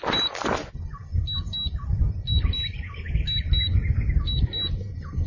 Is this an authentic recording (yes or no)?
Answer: yes